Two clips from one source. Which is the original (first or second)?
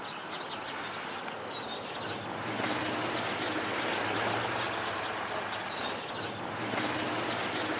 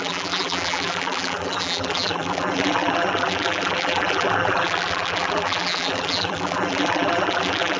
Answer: first